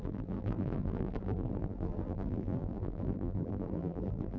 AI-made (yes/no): yes